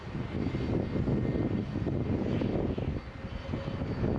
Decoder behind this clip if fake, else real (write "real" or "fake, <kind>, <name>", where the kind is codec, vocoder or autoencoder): real